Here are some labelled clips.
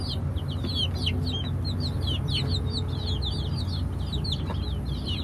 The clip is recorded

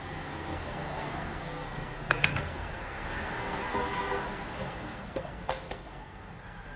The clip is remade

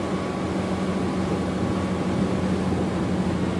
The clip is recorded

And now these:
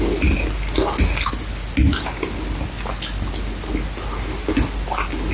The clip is recorded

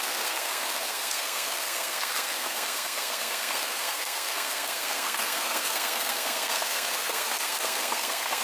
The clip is remade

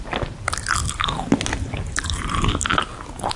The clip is recorded